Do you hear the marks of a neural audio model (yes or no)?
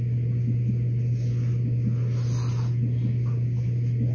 no